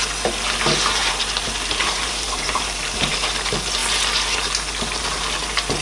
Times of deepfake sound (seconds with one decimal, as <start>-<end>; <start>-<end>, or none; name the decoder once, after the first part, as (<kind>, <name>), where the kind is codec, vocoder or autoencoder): 1.0-3.1 (vocoder, BigVGAN v2)